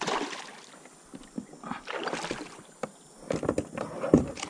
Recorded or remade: recorded